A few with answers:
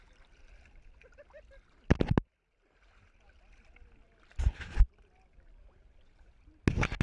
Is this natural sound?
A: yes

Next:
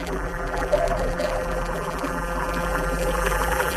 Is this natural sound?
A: no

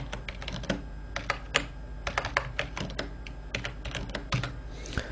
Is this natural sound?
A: yes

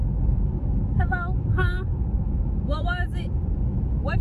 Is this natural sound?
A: yes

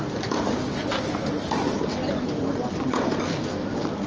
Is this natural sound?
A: yes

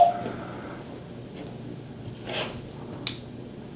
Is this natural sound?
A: yes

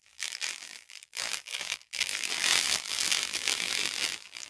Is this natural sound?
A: no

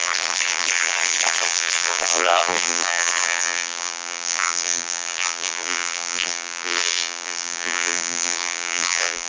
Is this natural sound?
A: no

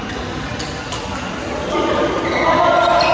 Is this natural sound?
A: yes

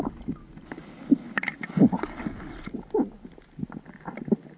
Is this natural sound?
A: yes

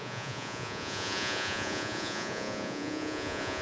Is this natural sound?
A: no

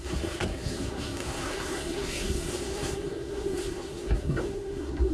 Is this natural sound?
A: no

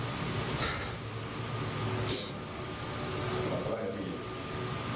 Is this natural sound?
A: yes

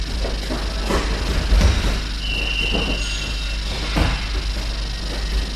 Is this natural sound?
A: yes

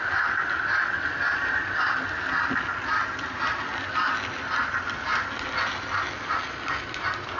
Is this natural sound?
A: yes